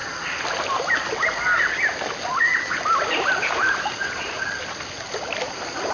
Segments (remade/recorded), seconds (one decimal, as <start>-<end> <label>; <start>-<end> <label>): 0.0-2.5 recorded; 2.5-4.4 remade; 4.4-5.9 recorded